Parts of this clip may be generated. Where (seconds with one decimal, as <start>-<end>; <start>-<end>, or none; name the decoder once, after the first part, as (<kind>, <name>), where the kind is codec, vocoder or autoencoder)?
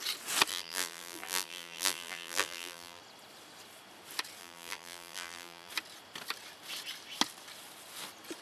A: 0.5-3.0 (vocoder, BigVGAN v2); 4.4-5.7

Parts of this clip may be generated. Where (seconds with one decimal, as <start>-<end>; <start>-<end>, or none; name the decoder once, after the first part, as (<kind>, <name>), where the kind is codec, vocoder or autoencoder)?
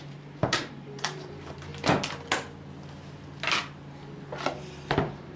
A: 0.0-1.7 (vocoder, BigVGAN v2); 4.9-5.4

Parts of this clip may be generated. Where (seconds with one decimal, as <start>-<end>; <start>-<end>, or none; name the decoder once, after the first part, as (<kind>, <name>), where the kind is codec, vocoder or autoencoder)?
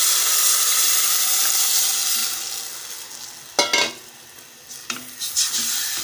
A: 0.8-1.7 (vocoder, BigVGAN v2)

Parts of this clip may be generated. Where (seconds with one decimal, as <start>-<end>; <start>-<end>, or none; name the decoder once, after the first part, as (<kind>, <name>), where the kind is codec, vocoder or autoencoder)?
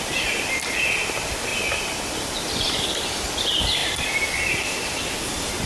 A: 0.0-5.7 (vocoder, BigVGAN v2)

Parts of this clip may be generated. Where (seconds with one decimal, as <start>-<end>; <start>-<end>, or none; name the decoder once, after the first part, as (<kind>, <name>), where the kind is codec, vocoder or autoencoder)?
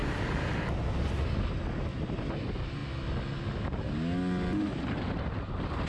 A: 0.0-0.6 (vocoder, BigVGAN v2)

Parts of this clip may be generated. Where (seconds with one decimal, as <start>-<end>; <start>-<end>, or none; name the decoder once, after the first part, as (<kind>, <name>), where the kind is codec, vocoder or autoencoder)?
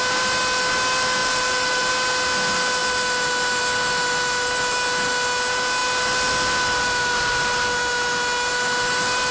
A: 1.2-1.9 (vocoder, BigVGAN v2)